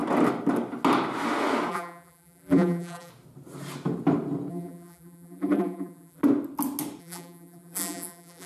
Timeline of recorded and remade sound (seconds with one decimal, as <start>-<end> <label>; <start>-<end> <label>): 0.0-1.7 recorded; 1.7-3.1 remade; 3.1-4.5 recorded; 4.5-6.2 remade; 6.2-7.0 recorded; 7.0-8.5 remade